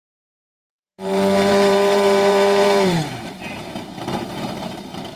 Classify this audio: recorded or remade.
remade